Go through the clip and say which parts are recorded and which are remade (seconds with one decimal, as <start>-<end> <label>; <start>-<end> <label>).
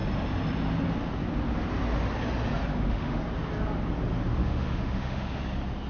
0.0-2.7 recorded; 2.7-3.2 remade; 3.2-4.4 recorded; 4.4-5.4 remade; 5.4-5.9 recorded